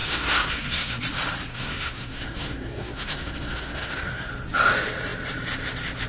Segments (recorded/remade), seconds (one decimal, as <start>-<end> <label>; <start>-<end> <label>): 0.0-1.0 remade; 1.0-1.5 recorded; 1.5-4.3 remade; 4.3-6.1 recorded